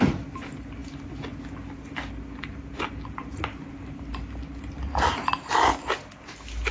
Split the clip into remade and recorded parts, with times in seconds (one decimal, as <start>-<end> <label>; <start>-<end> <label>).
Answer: 0.0-6.7 recorded